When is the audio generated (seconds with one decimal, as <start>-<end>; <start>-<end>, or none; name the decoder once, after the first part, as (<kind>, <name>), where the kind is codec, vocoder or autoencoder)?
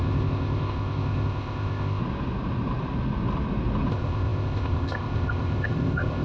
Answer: 0.0-2.0 (codec, ZipCodec); 3.9-6.2